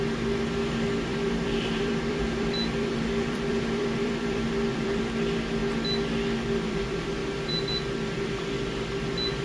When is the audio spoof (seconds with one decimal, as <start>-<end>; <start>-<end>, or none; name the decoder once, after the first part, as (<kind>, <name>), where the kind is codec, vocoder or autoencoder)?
1.1-5.1 (vocoder, BigVGAN v2)